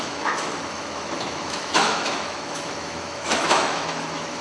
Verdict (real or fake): fake